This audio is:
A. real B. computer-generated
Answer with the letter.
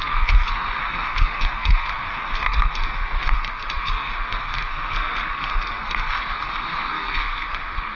B